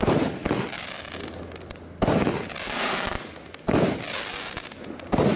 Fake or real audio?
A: real